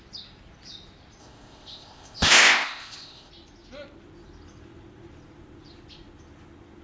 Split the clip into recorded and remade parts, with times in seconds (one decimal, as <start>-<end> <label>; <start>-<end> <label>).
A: 0.0-1.2 recorded; 1.2-3.3 remade; 3.3-6.8 recorded